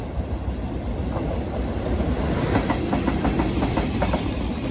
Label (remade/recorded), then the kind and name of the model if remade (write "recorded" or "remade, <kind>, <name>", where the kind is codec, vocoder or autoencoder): remade, vocoder, BigVGAN v2